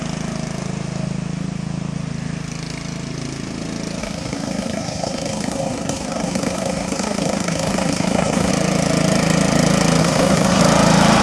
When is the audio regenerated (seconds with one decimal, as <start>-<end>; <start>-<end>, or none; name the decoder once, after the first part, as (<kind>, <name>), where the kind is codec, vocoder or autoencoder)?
4.0-8.5 (codec, SNAC); 10.0-10.6